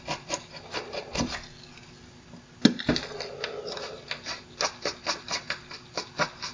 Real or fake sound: real